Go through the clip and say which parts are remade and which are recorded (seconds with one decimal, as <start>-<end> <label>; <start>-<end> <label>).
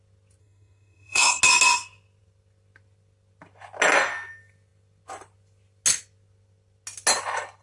0.0-0.4 recorded; 0.4-1.4 remade; 1.4-7.6 recorded